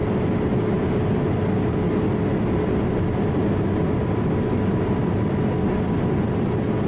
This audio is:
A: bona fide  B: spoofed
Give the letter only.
A